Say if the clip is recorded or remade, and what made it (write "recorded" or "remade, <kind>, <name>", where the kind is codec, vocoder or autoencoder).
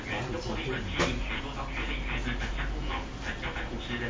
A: recorded